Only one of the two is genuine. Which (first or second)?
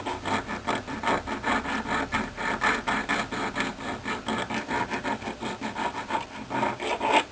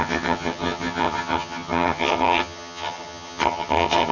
first